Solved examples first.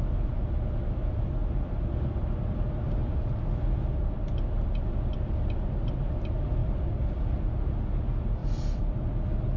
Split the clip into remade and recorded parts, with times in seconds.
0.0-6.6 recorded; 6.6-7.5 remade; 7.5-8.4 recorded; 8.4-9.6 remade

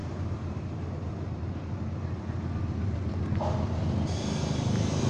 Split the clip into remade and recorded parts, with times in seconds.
0.0-1.4 remade; 1.4-5.1 recorded